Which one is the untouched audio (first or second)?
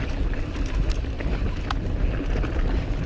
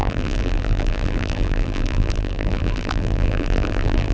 first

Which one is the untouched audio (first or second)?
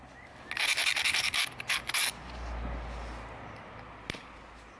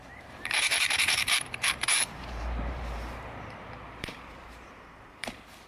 first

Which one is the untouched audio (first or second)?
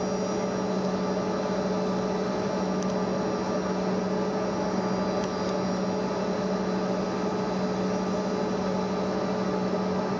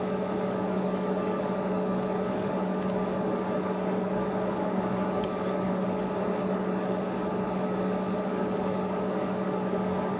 first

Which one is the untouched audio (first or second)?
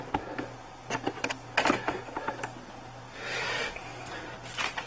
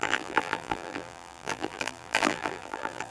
first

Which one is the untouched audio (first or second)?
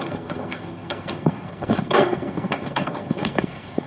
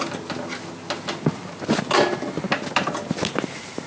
second